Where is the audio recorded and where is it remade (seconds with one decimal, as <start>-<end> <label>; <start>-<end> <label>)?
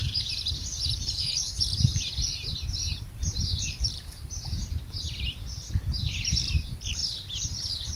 0.0-7.0 remade; 7.0-7.5 recorded; 7.5-8.0 remade